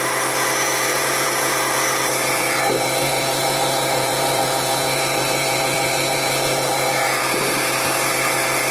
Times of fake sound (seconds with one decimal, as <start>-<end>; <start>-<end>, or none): 0.9-1.5; 3.0-7.5